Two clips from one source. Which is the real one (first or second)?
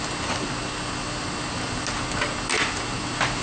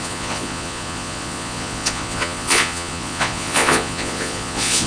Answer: first